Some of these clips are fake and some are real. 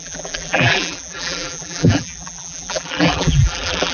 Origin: fake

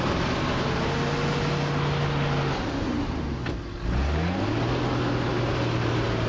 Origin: real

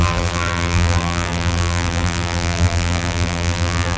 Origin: fake